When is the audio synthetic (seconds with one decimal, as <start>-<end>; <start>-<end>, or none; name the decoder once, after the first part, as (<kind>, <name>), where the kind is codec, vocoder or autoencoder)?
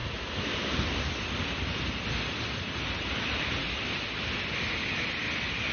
none